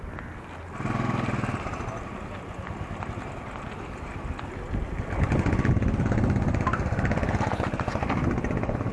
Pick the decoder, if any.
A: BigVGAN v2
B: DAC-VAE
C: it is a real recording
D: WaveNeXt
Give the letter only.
C